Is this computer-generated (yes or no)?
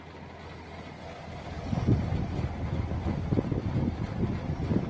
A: no